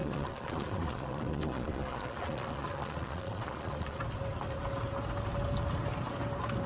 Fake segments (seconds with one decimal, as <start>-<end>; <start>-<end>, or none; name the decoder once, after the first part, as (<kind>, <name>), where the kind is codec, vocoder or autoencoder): 0.0-4.0 (vocoder, Vocos)